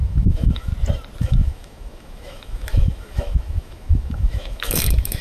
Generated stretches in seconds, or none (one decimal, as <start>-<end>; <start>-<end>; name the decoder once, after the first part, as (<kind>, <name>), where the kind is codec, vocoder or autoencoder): 0.0-0.7 (autoencoder, DAC-VAE); 1.2-5.2